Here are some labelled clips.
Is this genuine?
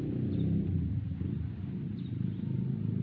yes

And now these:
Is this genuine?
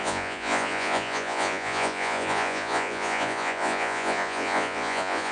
no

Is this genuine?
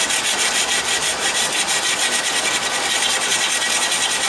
yes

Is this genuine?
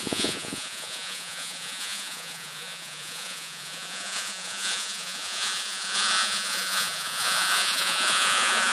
no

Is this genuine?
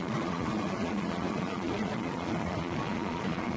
no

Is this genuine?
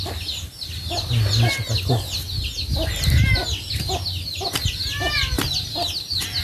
yes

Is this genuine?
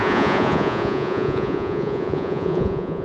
no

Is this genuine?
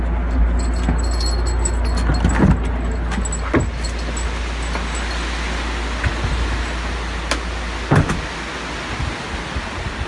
yes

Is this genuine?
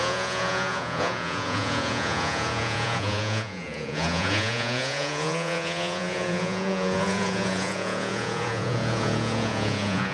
no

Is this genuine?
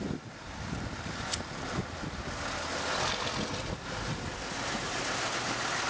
yes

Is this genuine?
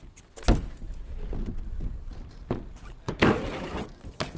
yes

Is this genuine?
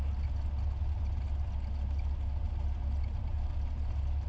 yes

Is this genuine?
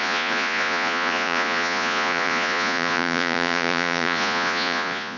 no